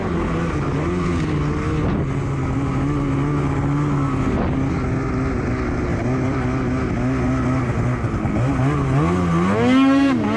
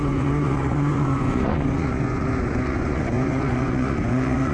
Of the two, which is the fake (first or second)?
second